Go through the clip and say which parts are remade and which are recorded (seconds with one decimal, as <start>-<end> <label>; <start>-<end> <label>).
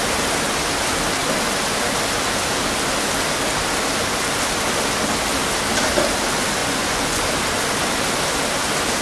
0.0-6.6 recorded; 6.6-7.2 remade; 7.2-9.0 recorded